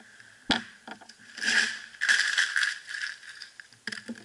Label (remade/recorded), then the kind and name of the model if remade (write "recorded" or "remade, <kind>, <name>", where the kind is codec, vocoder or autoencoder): recorded